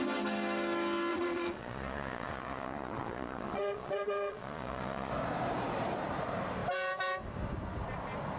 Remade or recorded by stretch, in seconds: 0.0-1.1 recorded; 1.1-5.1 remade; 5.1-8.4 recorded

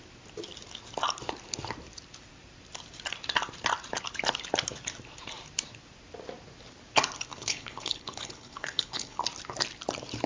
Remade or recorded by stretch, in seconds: 0.0-7.3 recorded; 7.3-9.2 remade; 9.2-10.3 recorded